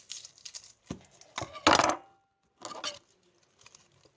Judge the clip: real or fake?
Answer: real